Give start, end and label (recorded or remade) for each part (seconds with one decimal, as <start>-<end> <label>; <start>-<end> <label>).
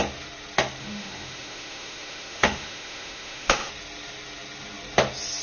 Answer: 0.0-0.8 recorded; 0.8-3.7 remade; 3.7-5.4 recorded